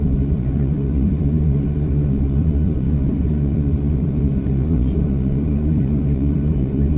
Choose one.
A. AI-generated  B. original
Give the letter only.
A